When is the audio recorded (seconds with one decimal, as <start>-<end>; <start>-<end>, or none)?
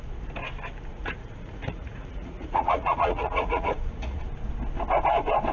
0.0-0.9; 4.2-5.5